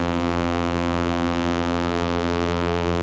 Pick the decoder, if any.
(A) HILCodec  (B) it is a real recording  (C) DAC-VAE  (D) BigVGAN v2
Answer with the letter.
D